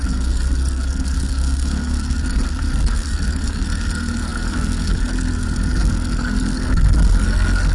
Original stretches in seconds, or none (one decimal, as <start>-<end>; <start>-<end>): none